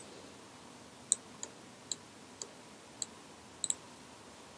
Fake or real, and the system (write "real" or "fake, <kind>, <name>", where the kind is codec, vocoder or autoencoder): real